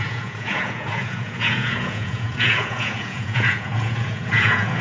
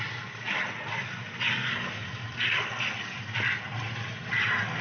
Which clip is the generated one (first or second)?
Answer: first